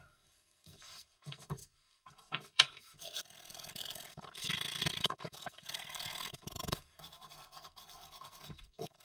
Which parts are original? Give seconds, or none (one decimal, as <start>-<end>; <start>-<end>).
none